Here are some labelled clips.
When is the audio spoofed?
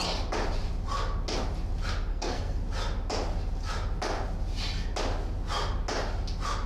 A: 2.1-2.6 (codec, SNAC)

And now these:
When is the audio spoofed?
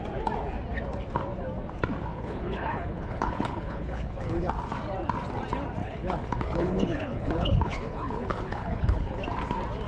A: 2.1-4.5 (codec, HILCodec); 5.8-9.2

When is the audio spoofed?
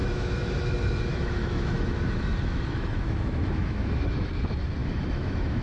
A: 0.0-0.7 (autoencoder, DAC-VAE); 1.1-4.3; 4.8-5.6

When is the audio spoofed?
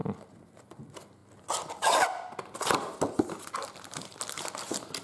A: none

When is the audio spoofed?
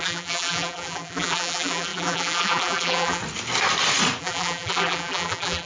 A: 0.0-3.2 (vocoder, BigVGAN v2); 4.2-5.7